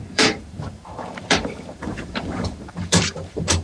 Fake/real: fake